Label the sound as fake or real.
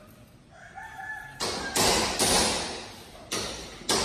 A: real